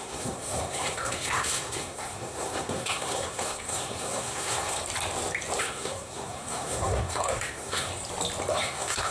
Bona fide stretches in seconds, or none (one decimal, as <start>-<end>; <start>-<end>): 4.8-5.6; 7.9-8.5